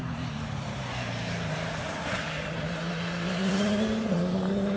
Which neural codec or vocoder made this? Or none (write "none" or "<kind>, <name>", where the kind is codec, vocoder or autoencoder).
none